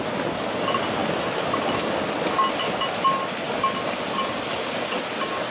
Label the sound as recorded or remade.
recorded